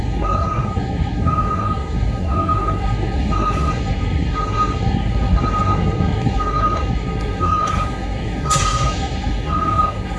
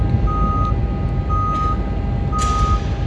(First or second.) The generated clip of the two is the first